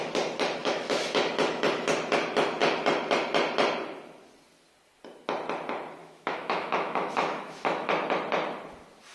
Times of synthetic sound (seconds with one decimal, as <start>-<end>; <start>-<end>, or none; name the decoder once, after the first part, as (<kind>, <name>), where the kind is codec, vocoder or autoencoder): 0.6-1.3 (autoencoder, DAC-VAE); 6.0-7.9